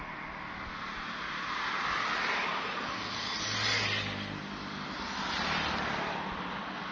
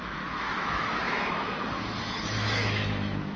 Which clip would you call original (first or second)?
first